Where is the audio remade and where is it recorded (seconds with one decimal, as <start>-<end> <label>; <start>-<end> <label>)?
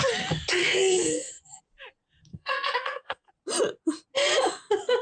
0.0-0.6 recorded; 0.6-1.3 remade; 1.3-2.3 recorded; 2.3-3.3 remade; 3.3-5.0 recorded